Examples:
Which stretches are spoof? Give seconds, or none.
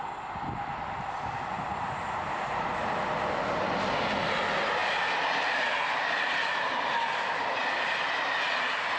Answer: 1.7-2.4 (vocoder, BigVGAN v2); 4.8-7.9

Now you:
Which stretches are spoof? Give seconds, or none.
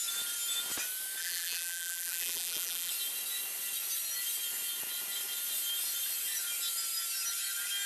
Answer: 1.2-2.9 (vocoder, BigVGAN v2)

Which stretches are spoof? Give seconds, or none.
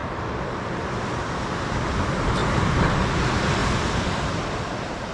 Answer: none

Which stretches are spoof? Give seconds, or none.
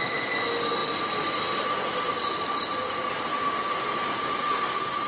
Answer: none